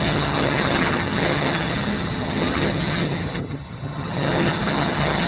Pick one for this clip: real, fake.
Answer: fake